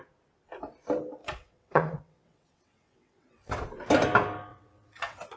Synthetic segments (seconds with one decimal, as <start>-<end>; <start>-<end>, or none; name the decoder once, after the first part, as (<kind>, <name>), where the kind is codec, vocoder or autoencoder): 1.2-3.6 (vocoder, WaveNeXt); 4.5-5.4